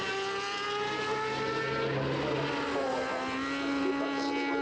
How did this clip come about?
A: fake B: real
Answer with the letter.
B